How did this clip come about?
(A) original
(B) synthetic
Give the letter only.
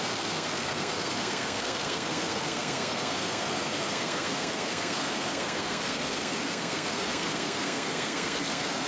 B